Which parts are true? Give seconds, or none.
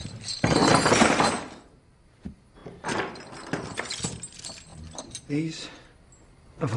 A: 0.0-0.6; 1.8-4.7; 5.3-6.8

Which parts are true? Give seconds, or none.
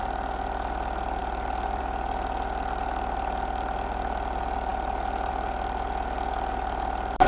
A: 0.0-7.3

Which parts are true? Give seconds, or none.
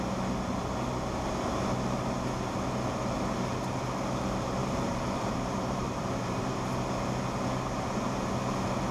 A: 0.0-4.6; 6.4-8.9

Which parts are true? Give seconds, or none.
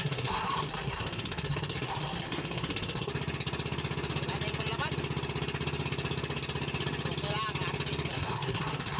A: 3.1-8.1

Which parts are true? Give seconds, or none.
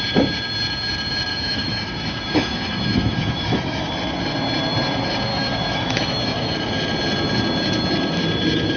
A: 0.0-1.3; 3.9-5.3; 6.5-8.8